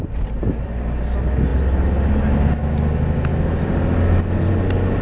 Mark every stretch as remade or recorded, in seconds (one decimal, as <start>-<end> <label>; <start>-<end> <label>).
0.0-1.0 remade; 1.0-5.0 recorded